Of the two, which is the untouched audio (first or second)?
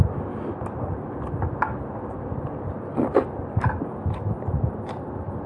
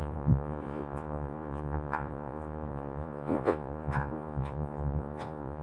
first